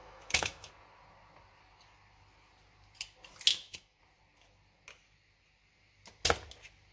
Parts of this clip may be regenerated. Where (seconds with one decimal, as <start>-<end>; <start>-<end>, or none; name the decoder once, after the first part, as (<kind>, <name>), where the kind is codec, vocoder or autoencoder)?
0.0-0.7 (autoencoder, DAC-VAE); 3.5-4.0